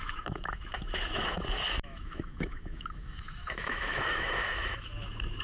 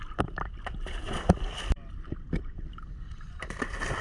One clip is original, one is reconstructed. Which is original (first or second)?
second